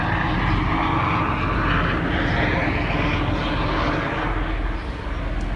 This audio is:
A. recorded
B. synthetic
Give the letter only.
A